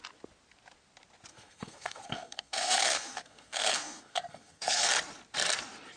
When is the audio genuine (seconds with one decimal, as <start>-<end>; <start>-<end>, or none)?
0.0-1.3; 4.9-6.0